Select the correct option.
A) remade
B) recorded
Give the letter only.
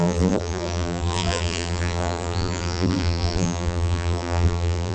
A